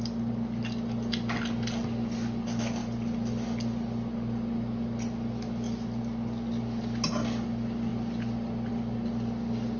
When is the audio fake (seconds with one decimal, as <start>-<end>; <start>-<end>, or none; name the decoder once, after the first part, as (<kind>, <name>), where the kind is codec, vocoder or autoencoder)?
none